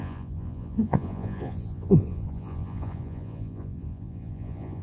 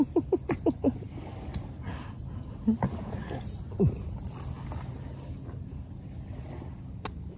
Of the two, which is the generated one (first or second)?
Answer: first